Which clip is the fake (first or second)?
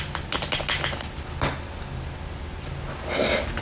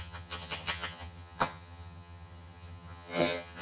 second